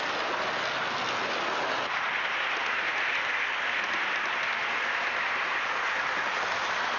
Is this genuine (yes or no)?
yes